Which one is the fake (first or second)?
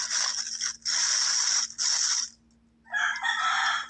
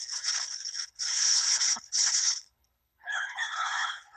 second